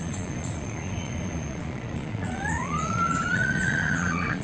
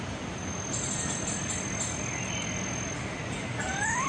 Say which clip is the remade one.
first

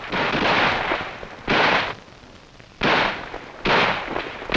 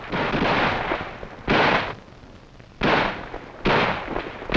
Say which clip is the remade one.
first